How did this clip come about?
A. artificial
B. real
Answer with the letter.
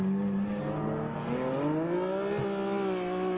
B